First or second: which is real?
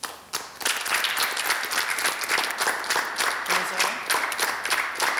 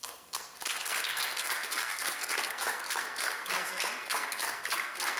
first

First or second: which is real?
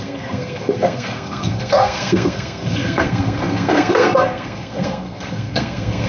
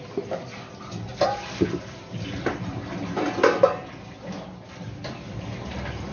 second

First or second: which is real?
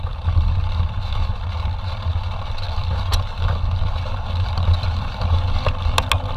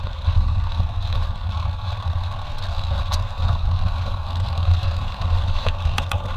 first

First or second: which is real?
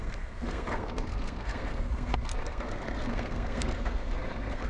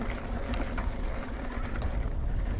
second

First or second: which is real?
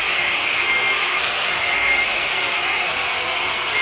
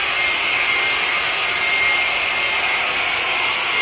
second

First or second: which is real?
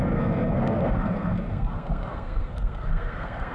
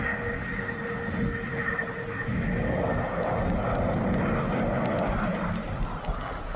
second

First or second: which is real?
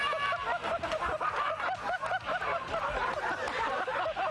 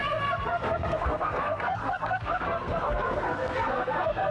first